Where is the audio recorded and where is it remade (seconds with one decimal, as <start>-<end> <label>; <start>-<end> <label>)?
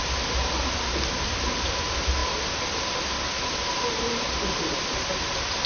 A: 0.0-5.7 recorded